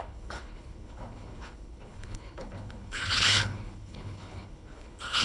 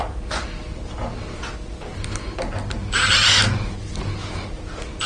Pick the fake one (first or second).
first